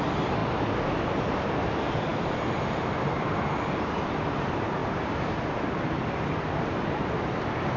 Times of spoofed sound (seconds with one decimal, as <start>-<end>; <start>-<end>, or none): 0.0-7.8